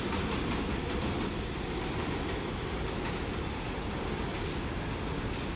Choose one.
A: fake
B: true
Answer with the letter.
B